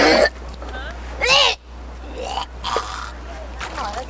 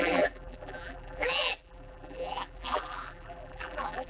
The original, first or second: first